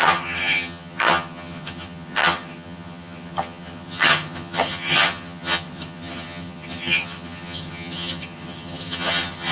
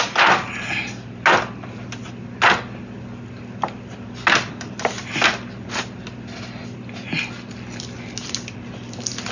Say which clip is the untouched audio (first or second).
second